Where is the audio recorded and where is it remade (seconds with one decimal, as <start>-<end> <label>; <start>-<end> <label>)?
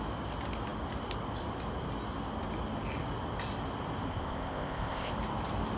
0.0-4.1 recorded; 4.1-5.1 remade; 5.1-5.8 recorded